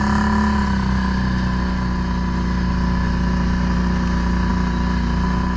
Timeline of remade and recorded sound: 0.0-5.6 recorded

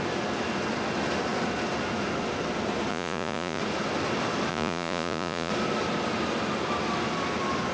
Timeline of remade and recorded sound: 0.0-2.9 recorded; 2.9-3.6 remade; 3.6-4.5 recorded; 4.5-5.5 remade; 5.5-7.7 recorded

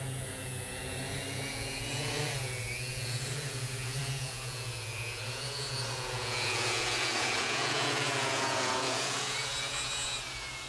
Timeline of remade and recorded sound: 0.0-10.7 remade